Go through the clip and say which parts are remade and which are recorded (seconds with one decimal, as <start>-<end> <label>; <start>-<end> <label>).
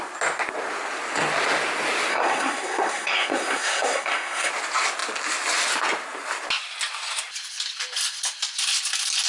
0.0-2.1 recorded; 2.1-4.5 remade; 4.5-9.3 recorded